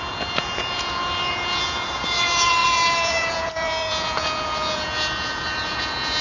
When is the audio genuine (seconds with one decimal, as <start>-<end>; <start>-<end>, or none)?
none